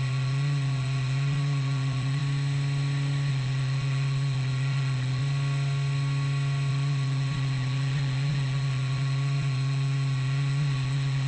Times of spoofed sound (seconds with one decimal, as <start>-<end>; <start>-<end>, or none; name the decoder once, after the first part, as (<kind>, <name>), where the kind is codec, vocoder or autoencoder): 0.0-2.2 (vocoder, Vocos); 3.3-5.2; 6.7-11.3